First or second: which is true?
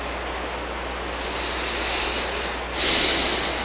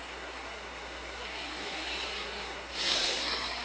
first